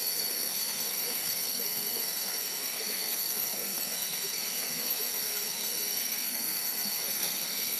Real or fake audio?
fake